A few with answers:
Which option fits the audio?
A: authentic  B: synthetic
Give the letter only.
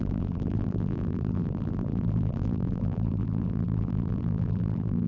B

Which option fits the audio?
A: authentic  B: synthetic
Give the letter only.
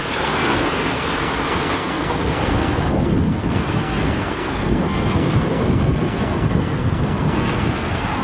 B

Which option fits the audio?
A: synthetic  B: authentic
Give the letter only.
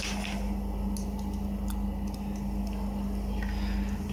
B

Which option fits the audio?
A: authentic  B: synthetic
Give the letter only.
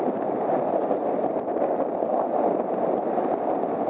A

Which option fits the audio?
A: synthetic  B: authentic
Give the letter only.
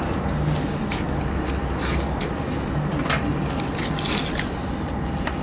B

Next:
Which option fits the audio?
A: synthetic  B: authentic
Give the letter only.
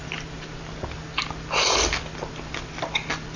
B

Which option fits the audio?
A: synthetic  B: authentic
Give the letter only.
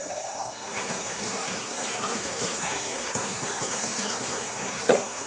A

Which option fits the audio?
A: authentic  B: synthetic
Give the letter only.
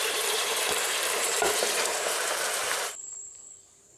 B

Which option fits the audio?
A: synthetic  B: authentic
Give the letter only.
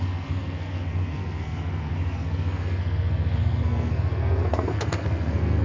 A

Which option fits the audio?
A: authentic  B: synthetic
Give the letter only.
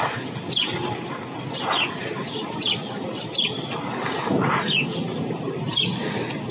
A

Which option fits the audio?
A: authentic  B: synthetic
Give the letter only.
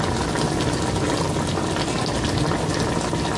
A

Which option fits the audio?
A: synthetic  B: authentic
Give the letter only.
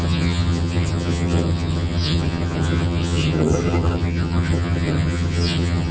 A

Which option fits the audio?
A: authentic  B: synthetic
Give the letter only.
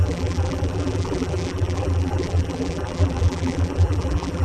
B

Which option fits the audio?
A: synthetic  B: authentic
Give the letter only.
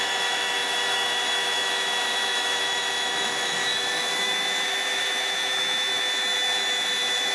A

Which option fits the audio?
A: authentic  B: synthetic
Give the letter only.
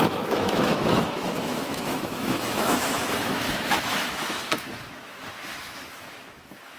B